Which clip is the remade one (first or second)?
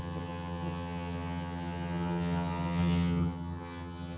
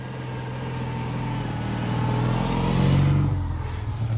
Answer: first